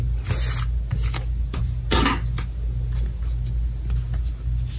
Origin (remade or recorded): recorded